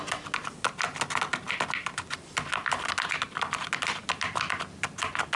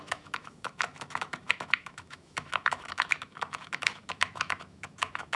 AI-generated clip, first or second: second